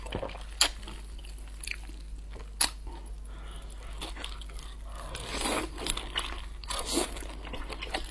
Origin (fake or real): real